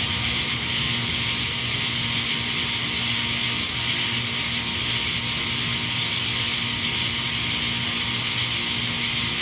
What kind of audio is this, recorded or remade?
recorded